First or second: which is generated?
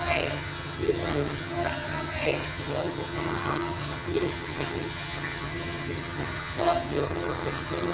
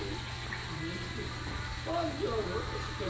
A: first